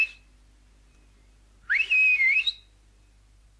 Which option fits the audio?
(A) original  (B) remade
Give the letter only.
A